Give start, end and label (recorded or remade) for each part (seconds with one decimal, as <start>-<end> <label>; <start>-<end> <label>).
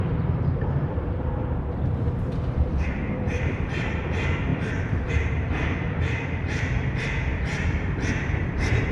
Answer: 0.0-8.9 remade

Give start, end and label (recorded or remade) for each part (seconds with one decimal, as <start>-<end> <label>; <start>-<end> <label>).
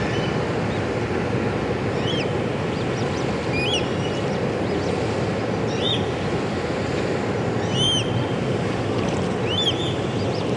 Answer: 0.0-10.6 recorded